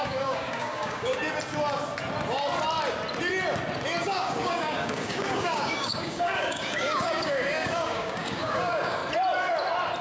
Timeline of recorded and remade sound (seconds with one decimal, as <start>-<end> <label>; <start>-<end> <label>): 0.0-1.1 remade; 1.1-4.0 recorded; 4.0-9.0 remade; 9.0-10.0 recorded